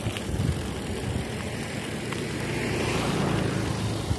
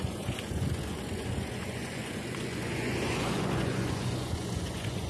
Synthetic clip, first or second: second